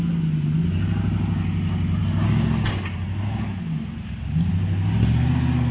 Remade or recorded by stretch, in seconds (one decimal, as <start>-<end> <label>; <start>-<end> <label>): 0.0-5.7 recorded